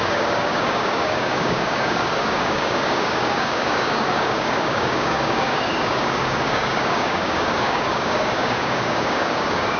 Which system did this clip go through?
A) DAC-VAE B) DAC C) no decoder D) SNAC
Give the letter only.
B